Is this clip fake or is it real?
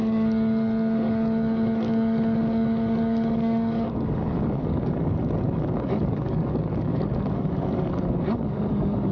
fake